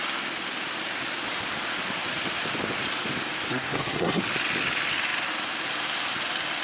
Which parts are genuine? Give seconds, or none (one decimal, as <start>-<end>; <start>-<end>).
0.0-3.5; 4.2-6.6